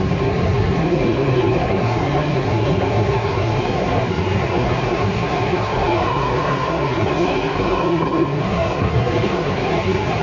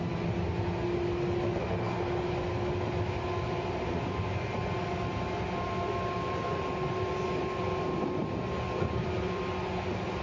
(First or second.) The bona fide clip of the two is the second